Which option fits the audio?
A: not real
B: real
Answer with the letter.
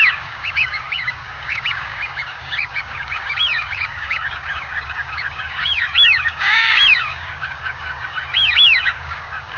A